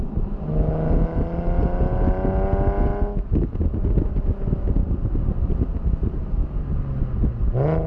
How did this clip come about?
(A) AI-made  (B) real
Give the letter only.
B